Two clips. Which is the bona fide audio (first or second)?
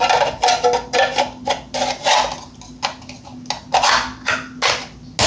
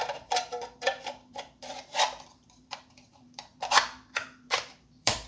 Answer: first